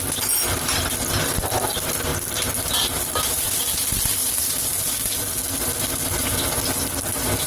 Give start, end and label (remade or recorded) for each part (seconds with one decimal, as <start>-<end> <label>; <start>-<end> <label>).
0.0-7.5 recorded